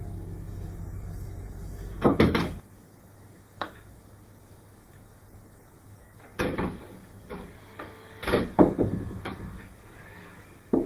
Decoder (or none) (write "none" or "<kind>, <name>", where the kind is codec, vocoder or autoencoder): codec, DAC